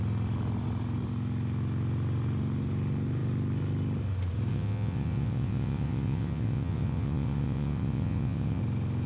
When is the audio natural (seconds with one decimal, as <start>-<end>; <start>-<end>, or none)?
0.0-4.5; 8.6-9.1